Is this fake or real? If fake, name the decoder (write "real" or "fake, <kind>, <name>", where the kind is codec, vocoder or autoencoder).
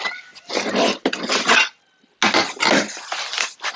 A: real